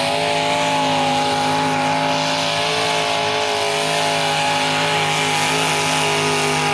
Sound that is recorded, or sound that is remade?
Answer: recorded